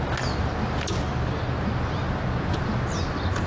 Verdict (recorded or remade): recorded